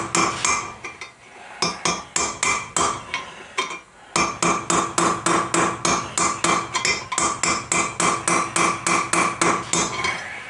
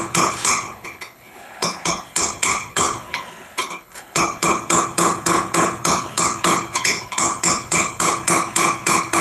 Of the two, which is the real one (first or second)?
first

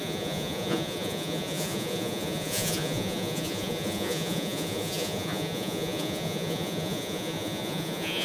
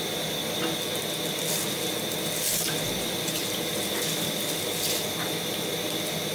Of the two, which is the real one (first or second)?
second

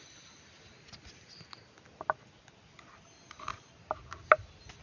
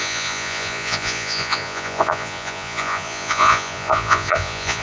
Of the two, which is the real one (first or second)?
first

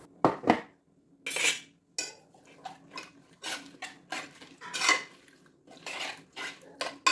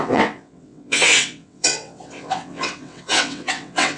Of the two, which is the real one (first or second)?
first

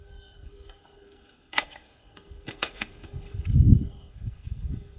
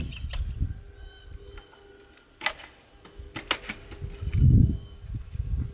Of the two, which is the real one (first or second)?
second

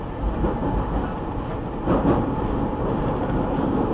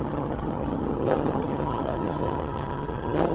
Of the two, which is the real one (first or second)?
first